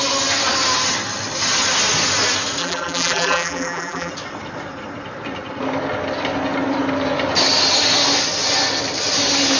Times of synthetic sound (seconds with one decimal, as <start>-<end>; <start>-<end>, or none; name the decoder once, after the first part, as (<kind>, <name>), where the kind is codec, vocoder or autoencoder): 2.6-4.1 (vocoder, BigVGAN v2)

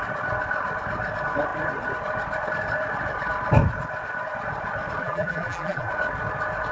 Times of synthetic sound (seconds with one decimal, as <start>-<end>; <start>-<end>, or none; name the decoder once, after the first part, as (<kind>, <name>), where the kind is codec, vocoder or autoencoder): 5.0-5.9 (vocoder, BigVGAN v2)

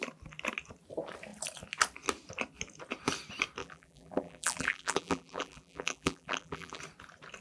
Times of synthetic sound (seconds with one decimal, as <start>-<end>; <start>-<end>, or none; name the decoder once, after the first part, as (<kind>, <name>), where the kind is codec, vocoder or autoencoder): 3.6-6.8 (vocoder, BigVGAN v2)

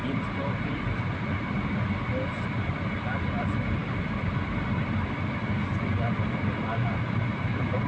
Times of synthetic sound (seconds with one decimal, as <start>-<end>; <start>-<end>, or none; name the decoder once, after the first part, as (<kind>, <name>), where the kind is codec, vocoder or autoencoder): 3.8-6.3 (vocoder, BigVGAN v2)

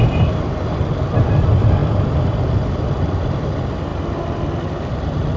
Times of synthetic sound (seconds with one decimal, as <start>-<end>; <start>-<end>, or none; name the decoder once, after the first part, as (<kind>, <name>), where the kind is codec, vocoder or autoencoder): none

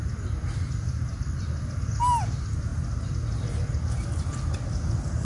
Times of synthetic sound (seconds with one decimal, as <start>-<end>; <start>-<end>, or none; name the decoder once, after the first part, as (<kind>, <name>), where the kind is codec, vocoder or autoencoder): none

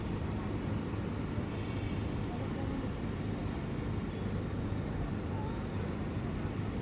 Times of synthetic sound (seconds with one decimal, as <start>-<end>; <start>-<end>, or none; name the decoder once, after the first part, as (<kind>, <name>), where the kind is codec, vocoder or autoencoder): none

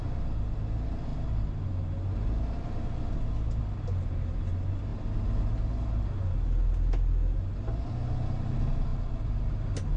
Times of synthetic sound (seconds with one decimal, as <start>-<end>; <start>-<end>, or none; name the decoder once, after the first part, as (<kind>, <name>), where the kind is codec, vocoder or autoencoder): none